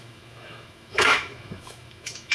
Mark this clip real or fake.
fake